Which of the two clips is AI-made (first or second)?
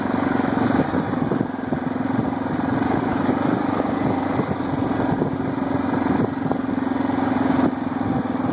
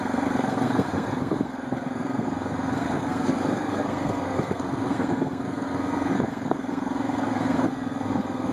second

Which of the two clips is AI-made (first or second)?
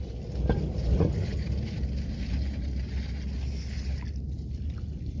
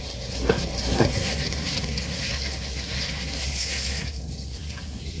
second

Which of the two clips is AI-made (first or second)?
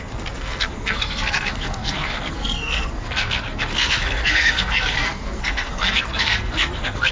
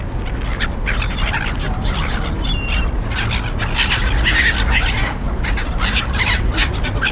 first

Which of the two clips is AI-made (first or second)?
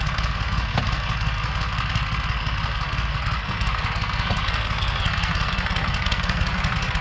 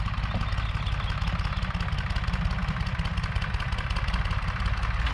first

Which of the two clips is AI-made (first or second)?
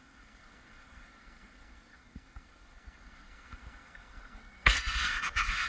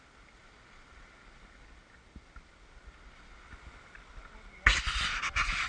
first